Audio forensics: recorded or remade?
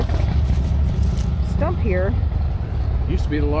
recorded